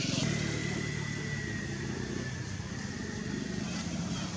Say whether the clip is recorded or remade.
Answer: recorded